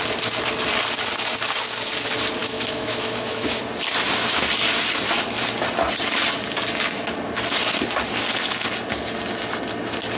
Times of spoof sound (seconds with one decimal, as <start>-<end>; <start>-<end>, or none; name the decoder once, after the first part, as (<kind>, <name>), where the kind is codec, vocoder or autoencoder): 2.4-3.6 (autoencoder, DAC-VAE)